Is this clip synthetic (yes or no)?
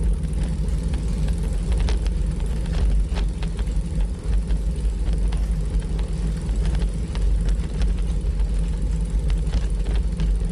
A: no